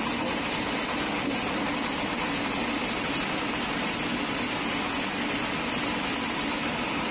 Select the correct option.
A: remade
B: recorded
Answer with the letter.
B